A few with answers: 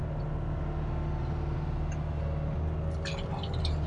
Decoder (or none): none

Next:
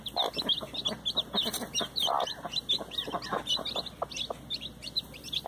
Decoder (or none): none